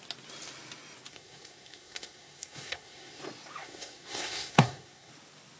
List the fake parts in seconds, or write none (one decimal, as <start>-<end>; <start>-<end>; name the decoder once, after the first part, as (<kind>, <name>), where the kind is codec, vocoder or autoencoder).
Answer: 1.1-3.2 (codec, SNAC); 3.6-5.1